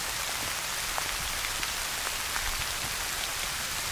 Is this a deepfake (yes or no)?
no